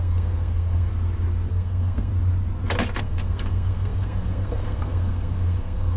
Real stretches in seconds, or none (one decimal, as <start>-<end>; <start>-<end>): 0.9-1.5; 2.1-3.0